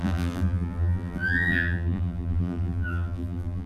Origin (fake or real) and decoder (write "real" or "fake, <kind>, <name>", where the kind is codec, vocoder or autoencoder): fake, vocoder, BigVGAN v2